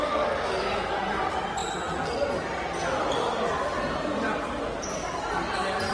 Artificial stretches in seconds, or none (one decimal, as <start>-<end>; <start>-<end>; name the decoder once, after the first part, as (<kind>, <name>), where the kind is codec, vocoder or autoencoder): none